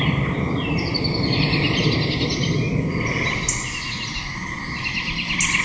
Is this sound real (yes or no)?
yes